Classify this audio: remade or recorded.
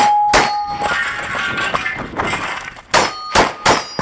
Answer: recorded